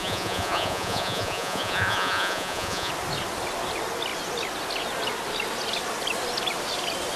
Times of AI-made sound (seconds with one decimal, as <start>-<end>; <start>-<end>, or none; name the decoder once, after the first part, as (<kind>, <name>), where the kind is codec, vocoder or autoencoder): 0.0-2.9 (vocoder, Vocos)